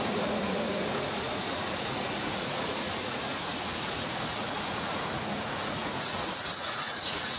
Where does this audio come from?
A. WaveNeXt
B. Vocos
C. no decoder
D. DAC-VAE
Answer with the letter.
B